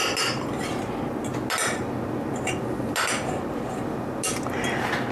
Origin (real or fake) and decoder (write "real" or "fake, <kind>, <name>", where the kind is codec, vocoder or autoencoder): real